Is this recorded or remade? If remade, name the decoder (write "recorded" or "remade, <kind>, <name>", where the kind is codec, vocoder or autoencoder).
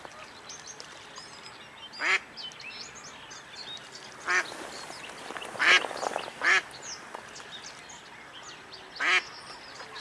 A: recorded